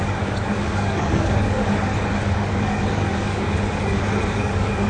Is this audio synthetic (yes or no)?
yes